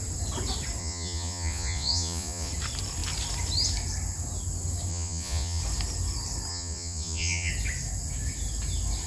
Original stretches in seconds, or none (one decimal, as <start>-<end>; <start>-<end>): 0.0-0.8; 2.5-4.9; 5.6-6.5; 7.5-9.1